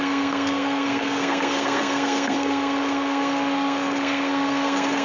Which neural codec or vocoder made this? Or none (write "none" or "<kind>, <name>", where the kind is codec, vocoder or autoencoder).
codec, SNAC